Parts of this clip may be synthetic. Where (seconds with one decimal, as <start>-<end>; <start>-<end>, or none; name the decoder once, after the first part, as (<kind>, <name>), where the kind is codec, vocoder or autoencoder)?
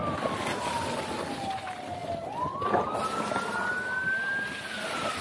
none